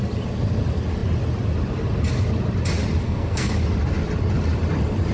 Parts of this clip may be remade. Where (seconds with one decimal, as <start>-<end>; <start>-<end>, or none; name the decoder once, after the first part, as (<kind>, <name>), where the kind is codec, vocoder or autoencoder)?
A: 3.0-3.5 (codec, SNAC)